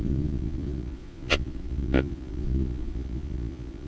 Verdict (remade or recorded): remade